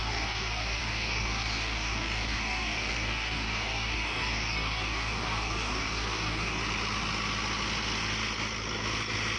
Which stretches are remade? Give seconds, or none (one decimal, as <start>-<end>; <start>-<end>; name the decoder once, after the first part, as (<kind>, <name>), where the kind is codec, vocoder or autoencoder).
0.0-6.6 (codec, DAC)